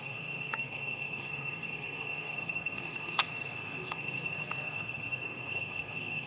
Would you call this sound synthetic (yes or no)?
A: yes